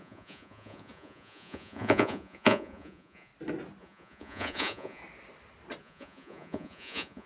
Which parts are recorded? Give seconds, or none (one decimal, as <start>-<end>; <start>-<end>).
3.3-3.8; 5.0-5.8